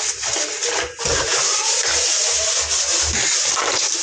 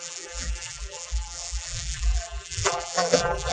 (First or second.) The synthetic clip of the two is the second